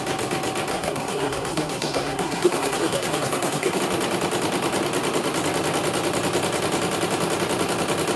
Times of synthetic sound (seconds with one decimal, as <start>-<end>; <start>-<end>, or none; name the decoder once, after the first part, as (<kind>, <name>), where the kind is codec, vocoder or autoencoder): 0.7-3.8 (codec, SNAC)